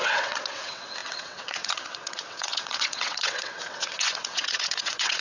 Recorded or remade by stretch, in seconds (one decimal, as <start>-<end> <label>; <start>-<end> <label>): 0.0-5.2 remade